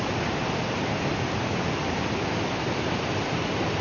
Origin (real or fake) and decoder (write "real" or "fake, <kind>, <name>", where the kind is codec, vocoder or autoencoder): real